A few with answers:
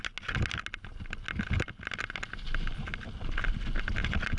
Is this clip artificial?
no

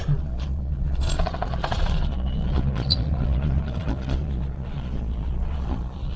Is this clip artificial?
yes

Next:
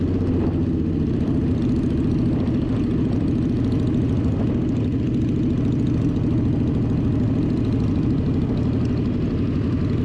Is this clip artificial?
no